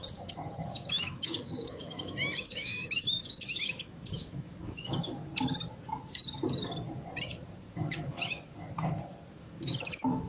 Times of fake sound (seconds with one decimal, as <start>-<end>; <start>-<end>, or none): 0.0-5.2; 7.7-8.5; 9.4-10.3